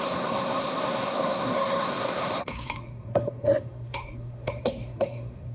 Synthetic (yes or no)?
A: yes